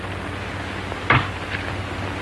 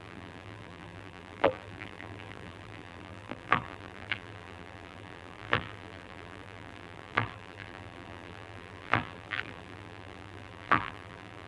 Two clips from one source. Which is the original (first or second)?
first